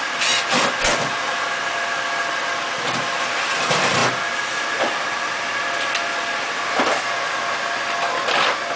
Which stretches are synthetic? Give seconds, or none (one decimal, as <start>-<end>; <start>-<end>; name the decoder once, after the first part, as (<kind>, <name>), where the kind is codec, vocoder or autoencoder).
none